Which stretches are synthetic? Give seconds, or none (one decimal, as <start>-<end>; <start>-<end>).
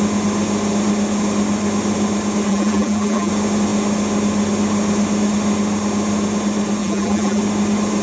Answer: 2.5-3.3; 6.8-7.4